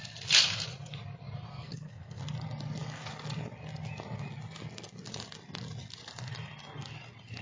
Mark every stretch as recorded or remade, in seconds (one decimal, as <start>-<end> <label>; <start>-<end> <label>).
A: 0.0-1.5 recorded; 1.5-2.2 remade; 2.2-7.4 recorded